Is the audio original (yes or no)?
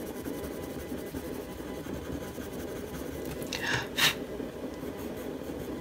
yes